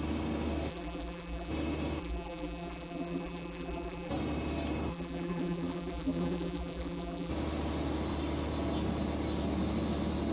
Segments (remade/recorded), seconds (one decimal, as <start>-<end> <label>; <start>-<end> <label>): 0.0-0.7 recorded; 0.7-1.5 remade; 1.5-2.0 recorded; 2.0-4.1 remade; 4.1-4.9 recorded; 4.9-7.3 remade; 7.3-10.3 recorded